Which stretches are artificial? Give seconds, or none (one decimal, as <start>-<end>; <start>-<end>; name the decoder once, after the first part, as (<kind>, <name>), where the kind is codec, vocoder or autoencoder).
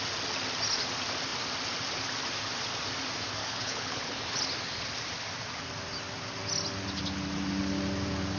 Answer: 3.4-4.4 (codec, HILCodec)